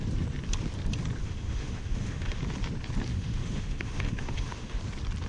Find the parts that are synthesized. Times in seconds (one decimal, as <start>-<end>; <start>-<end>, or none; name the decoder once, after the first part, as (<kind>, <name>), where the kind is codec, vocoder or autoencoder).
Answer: 1.2-2.4 (autoencoder, DAC-VAE); 3.1-4.8